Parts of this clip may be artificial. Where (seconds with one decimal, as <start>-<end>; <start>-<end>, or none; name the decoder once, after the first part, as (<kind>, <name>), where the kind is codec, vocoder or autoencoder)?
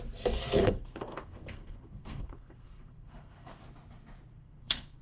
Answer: 0.6-3.6 (codec, SNAC); 4.3-5.0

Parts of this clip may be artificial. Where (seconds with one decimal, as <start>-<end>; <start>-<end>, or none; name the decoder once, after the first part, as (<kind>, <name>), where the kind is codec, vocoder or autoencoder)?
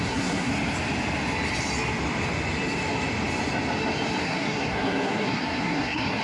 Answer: 0.0-0.5 (codec, SNAC); 4.2-6.2